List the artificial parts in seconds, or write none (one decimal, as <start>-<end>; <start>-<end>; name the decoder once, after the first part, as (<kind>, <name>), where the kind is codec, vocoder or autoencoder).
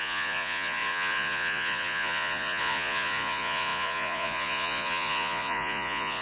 0.0-6.2 (vocoder, Vocos)